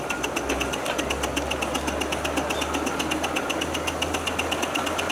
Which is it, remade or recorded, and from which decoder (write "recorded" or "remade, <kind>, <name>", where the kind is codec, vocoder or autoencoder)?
recorded